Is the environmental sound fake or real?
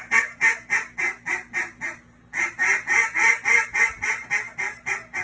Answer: real